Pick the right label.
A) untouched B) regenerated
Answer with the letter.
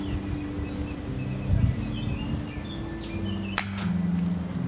A